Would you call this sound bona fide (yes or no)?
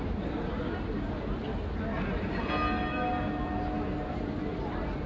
yes